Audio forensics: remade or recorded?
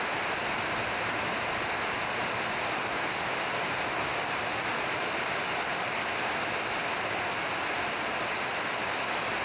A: recorded